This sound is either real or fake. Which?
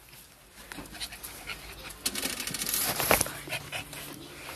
real